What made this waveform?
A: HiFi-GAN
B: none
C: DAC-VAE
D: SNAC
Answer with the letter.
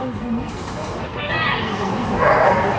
D